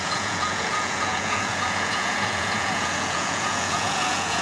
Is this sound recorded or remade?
remade